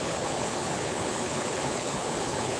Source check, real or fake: fake